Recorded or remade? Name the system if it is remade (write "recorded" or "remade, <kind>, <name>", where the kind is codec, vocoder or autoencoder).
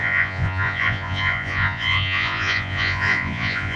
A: remade, vocoder, Vocos